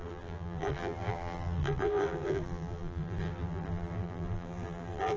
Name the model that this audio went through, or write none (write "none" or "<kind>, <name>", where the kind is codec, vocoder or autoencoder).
vocoder, BigVGAN v2